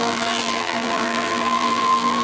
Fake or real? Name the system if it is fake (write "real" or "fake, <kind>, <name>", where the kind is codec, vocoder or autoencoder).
fake, vocoder, BigVGAN v2